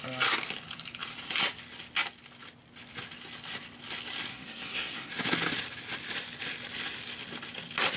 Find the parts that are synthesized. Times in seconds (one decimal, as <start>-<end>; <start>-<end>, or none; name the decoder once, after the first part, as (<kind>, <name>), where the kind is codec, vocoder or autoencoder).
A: 4.3-5.1 (codec, SNAC)